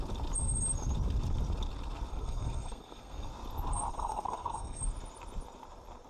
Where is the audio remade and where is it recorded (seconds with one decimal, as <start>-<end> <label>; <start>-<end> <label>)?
0.0-2.1 recorded; 2.1-3.3 remade; 3.3-3.9 recorded; 3.9-4.8 remade; 4.8-6.1 recorded